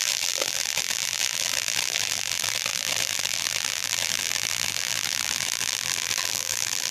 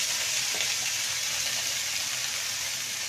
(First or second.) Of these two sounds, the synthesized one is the first